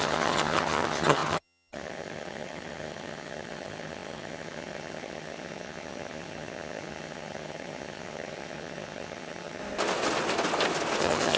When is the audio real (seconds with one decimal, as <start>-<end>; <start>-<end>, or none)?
9.6-11.0